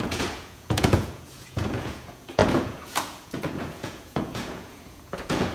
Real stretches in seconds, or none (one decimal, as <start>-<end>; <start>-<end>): none